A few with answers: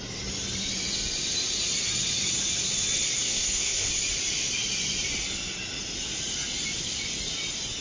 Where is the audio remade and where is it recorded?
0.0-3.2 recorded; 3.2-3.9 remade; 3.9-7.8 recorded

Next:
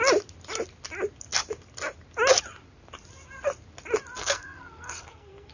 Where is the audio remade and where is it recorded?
0.0-4.2 recorded; 4.2-5.5 remade

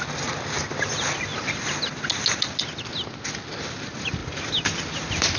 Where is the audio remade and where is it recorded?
0.0-5.4 recorded